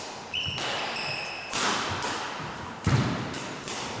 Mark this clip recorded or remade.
recorded